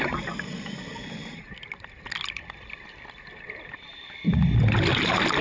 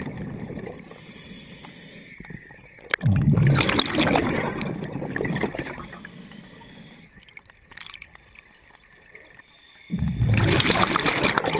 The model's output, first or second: second